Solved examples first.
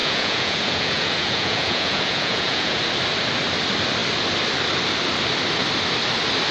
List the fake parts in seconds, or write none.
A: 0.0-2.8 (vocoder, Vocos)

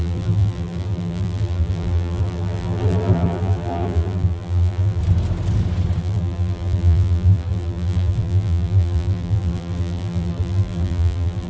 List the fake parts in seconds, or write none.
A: 0.0-5.0 (vocoder, BigVGAN v2); 6.0-11.5